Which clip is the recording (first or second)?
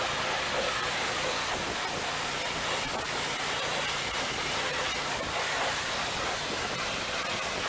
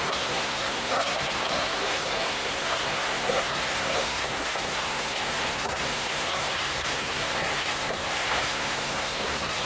first